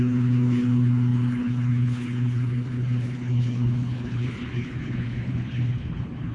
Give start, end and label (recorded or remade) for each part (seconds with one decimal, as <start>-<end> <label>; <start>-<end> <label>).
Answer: 0.0-6.3 remade